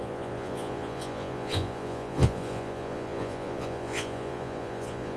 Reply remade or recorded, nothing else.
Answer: remade